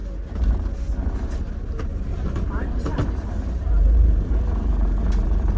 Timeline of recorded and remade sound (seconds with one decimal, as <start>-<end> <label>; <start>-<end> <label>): 0.0-1.9 recorded; 1.9-5.6 remade